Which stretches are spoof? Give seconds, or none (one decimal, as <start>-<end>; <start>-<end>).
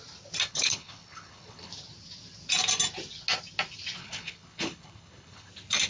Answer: 0.5-1.7; 4.0-5.5